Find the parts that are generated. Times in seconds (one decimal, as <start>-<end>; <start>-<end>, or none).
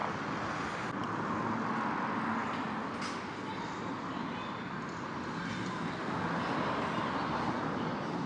none